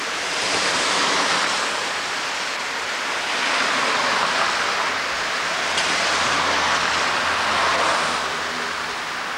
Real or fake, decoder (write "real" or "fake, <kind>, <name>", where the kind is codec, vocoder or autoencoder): real